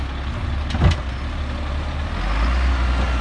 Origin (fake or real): real